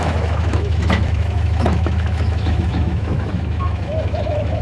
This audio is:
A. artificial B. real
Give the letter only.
A